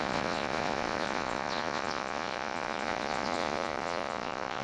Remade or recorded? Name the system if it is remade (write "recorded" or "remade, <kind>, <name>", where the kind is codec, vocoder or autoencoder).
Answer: remade, vocoder, Vocos